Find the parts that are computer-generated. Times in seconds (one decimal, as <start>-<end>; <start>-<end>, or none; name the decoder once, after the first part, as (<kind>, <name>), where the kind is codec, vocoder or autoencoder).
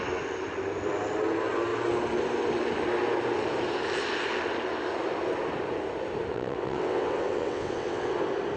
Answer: 6.3-8.2 (vocoder, WaveNeXt)